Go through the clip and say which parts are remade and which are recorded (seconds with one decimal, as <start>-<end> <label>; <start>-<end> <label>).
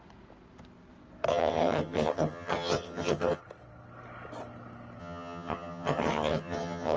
0.0-1.3 recorded; 1.3-3.4 remade; 3.4-5.0 recorded; 5.0-7.0 remade